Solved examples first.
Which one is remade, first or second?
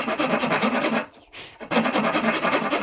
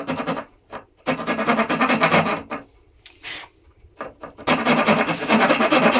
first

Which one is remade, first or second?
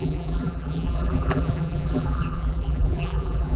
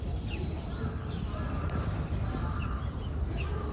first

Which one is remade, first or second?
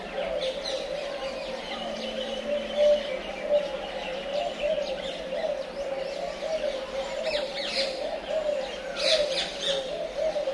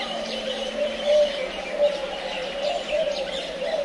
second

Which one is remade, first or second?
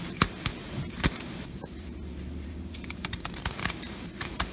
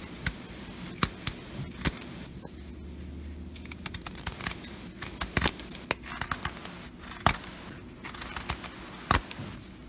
first